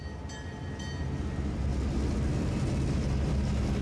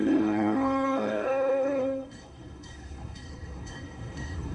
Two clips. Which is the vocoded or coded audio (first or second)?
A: second